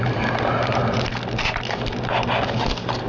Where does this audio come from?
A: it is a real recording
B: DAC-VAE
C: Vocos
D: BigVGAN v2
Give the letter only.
A